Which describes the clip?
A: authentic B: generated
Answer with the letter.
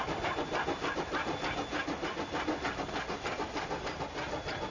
A